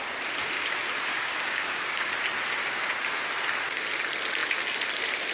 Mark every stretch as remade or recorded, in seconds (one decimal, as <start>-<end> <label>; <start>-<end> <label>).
0.0-1.1 recorded; 1.1-2.1 remade; 2.1-2.6 recorded; 2.6-3.3 remade; 3.3-5.3 recorded